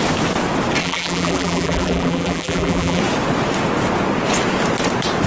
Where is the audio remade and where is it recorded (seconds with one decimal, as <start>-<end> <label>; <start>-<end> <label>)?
0.0-0.8 recorded; 0.8-3.0 remade; 3.0-5.3 recorded